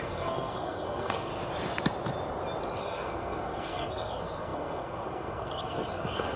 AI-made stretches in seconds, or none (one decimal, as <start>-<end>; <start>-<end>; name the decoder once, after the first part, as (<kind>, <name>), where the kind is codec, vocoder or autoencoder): 0.0-1.3 (codec, SNAC); 2.8-6.4